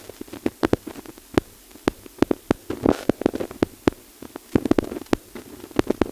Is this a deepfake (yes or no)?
no